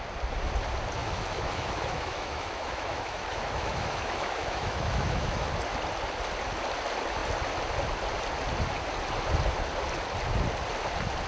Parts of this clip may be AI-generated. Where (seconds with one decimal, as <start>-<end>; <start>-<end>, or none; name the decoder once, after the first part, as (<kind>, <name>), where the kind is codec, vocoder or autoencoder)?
1.0-5.5 (autoencoder, DAC-VAE)